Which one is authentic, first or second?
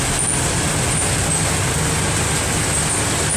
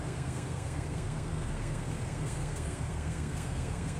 first